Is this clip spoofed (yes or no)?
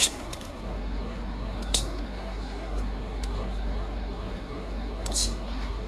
yes